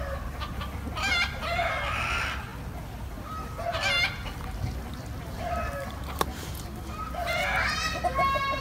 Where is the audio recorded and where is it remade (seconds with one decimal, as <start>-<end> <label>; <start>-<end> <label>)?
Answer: 0.0-8.6 recorded